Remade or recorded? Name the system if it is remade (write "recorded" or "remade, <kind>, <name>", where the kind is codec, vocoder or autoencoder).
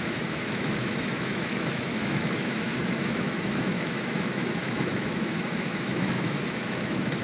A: remade, autoencoder, DAC-VAE